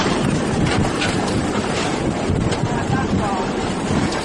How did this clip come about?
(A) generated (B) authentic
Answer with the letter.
A